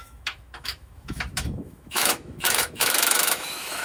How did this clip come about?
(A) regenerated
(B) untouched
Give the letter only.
A